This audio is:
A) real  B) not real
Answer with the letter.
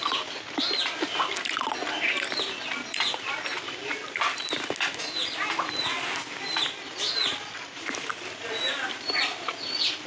A